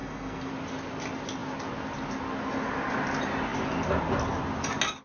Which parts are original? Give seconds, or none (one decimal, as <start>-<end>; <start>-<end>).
0.5-5.0